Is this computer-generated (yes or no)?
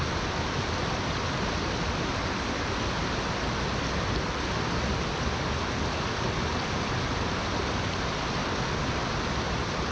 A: no